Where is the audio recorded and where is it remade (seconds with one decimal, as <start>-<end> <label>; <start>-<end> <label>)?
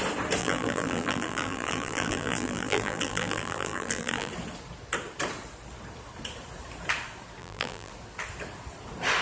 0.0-0.4 recorded; 0.4-4.3 remade; 4.3-7.4 recorded; 7.4-7.9 remade; 7.9-9.2 recorded